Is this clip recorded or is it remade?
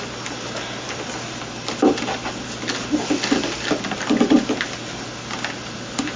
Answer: recorded